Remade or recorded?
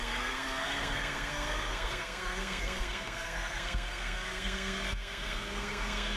remade